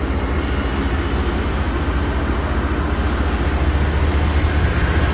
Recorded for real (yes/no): yes